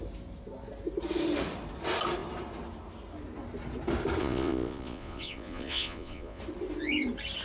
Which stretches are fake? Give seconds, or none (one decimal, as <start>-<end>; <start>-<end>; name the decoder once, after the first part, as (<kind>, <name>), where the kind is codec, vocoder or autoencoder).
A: 4.2-6.4 (vocoder, Vocos)